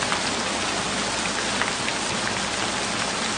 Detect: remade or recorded recorded